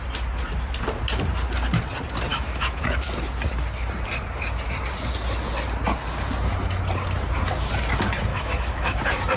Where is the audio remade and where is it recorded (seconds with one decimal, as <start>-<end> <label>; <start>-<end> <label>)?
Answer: 0.0-2.3 recorded; 2.3-2.8 remade; 2.8-8.3 recorded; 8.3-9.0 remade; 9.0-9.4 recorded